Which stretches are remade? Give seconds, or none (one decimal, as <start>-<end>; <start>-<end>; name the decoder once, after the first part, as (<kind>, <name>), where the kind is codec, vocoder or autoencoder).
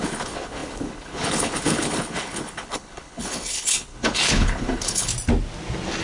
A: 0.0-5.1 (codec, HILCodec)